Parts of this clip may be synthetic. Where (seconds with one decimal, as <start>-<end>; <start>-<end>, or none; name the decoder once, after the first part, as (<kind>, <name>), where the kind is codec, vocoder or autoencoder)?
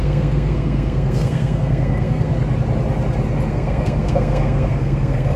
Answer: 0.0-2.3 (codec, SNAC); 3.5-5.4